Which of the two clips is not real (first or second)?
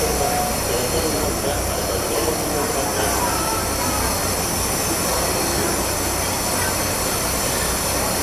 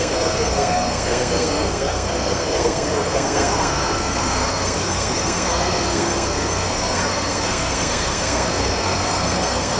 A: second